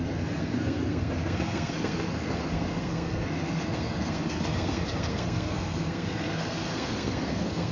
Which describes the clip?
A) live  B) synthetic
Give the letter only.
B